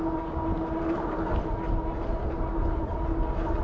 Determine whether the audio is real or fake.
real